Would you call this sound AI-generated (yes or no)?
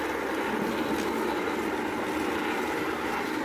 no